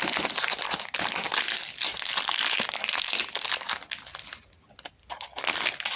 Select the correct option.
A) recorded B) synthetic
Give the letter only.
A